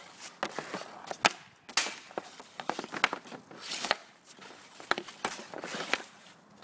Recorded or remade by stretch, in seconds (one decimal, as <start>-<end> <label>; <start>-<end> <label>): 0.0-6.6 recorded